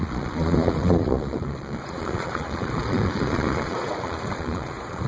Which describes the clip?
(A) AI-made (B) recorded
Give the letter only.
A